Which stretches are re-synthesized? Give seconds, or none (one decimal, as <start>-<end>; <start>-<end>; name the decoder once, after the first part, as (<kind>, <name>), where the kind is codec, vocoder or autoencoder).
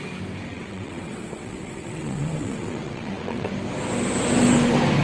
0.5-3.5 (vocoder, WaveNeXt)